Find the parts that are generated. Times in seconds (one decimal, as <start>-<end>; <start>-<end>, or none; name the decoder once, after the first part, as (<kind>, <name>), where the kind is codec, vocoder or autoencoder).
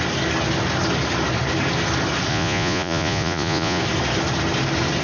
2.3-3.8 (vocoder, Vocos)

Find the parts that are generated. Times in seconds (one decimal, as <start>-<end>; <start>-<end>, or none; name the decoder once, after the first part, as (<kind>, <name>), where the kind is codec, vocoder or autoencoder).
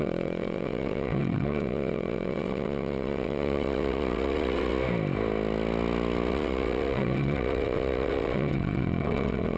0.0-4.7 (vocoder, WaveNeXt); 6.3-9.6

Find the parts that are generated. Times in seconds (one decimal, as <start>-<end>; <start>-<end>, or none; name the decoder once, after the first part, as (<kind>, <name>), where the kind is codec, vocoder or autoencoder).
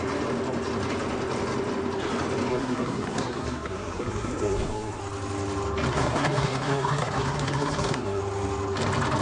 2.5-5.0 (codec, SNAC); 5.9-8.2